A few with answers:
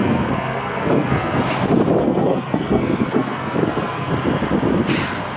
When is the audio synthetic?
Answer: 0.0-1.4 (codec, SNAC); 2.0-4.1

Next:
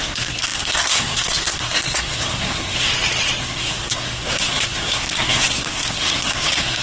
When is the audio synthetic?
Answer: 0.0-2.9 (codec, SNAC); 3.4-6.8

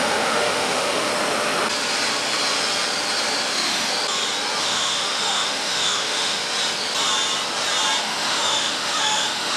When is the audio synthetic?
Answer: 0.0-1.1 (autoencoder, DAC-VAE); 3.5-3.9; 4.6-6.4; 8.0-9.6

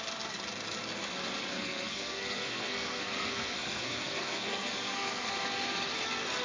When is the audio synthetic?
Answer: 1.5-5.3 (codec, SNAC)

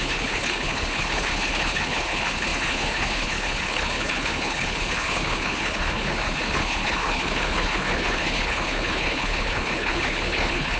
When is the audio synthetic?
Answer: 0.0-10.8 (codec, HILCodec)

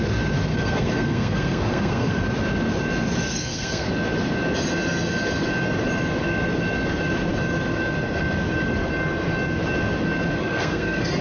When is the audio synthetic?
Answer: 0.5-2.2 (codec, SNAC); 3.3-3.9; 10.4-11.2

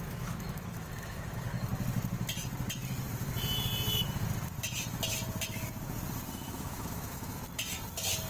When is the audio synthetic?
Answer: 0.0-1.7 (autoencoder, DAC-VAE); 6.3-7.4

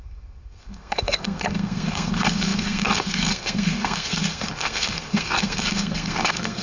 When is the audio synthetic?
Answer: 0.0-6.6 (codec, SNAC)